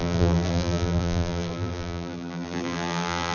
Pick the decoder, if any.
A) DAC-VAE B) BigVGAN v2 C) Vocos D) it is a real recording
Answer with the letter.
B